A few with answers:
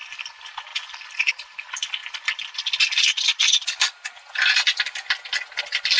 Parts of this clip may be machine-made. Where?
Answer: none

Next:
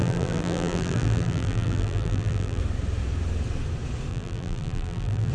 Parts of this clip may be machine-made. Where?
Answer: 0.0-2.6 (vocoder, BigVGAN v2); 4.1-5.3

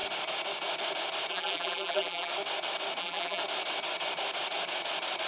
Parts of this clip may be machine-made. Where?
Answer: 1.3-2.3 (vocoder, BigVGAN v2); 3.0-3.4

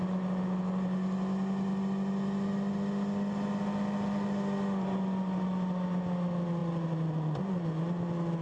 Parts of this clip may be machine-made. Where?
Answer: 6.6-7.4 (vocoder, BigVGAN v2)

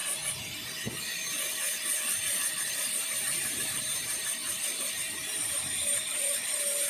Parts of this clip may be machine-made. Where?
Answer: 2.5-6.9 (vocoder, BigVGAN v2)